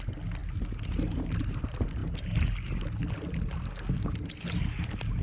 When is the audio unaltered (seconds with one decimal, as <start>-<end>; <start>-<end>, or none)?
0.0-5.2